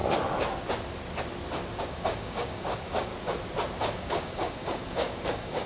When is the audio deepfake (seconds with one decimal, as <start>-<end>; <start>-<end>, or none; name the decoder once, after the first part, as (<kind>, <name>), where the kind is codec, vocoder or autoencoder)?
1.8-3.1 (codec, DAC); 3.8-5.7